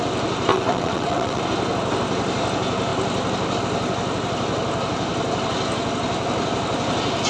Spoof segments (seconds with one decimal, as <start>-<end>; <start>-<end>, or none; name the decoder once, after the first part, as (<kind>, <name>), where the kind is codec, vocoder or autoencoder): 0.5-1.4 (vocoder, WaveNeXt)

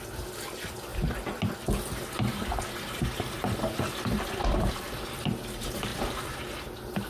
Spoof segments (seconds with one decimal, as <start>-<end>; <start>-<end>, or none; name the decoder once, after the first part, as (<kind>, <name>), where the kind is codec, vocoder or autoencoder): none

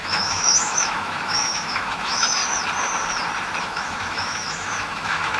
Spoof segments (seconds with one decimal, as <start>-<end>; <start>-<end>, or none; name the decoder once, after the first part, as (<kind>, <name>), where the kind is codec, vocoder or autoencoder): 0.0-2.4 (autoencoder, DAC-VAE); 3.6-5.4